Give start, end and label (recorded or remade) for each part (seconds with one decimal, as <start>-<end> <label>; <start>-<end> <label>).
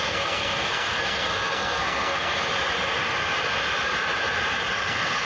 0.0-2.5 remade; 2.5-4.7 recorded; 4.7-5.3 remade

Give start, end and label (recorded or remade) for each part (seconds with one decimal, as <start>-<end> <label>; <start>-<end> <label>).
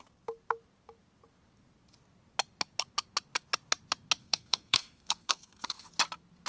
0.0-4.2 recorded; 4.2-5.9 remade; 5.9-6.5 recorded